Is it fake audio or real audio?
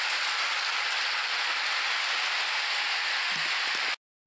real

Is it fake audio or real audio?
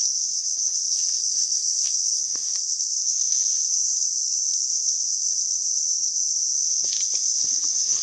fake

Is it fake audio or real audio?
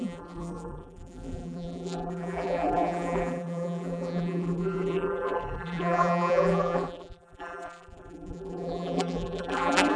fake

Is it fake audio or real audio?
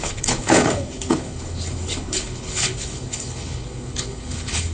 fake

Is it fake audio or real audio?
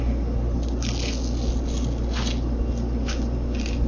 real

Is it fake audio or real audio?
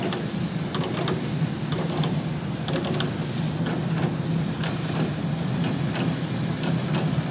real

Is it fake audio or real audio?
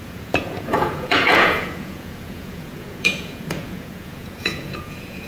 fake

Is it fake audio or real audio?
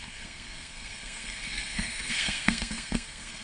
fake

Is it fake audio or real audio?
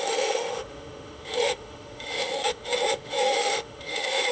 fake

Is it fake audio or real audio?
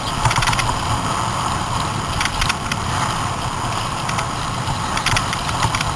real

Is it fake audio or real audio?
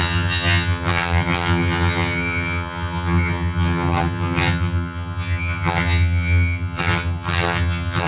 fake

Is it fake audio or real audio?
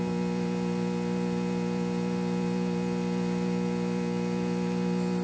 fake